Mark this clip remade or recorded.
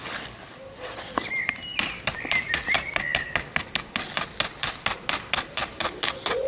recorded